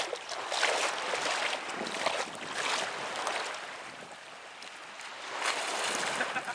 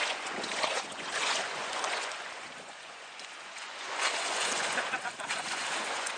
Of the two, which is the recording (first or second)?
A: first